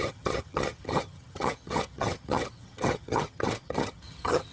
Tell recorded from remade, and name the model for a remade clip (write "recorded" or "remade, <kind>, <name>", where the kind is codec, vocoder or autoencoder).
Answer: remade, vocoder, HiFi-GAN